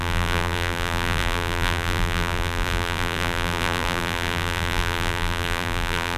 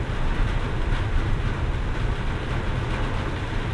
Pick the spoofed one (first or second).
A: first